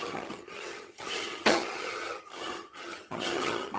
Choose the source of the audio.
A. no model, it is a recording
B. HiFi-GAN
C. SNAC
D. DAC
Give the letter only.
B